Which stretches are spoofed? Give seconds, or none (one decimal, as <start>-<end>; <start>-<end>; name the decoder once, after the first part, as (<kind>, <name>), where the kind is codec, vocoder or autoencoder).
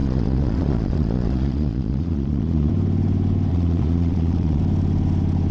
0.0-2.7 (vocoder, Vocos); 3.5-4.6